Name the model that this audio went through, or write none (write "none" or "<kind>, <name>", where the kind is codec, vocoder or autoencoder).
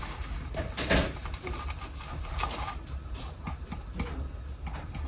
none